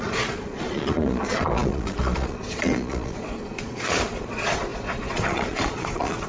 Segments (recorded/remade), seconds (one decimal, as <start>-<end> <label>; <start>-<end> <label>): 0.0-6.3 remade